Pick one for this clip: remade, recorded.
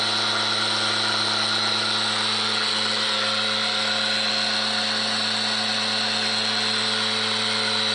recorded